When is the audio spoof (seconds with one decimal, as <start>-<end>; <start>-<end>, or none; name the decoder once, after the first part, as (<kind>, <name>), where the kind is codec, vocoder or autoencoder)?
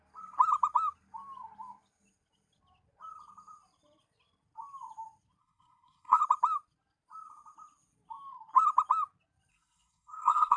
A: 5.4-6.2 (codec, SNAC); 9.5-10.6